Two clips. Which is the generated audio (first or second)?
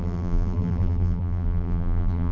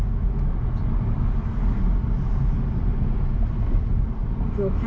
first